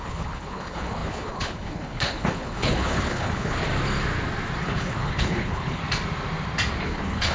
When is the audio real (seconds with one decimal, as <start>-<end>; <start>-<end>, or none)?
3.7-4.6; 5.8-6.8